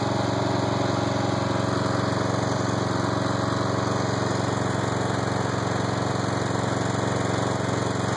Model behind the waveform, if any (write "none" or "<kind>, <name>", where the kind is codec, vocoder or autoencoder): none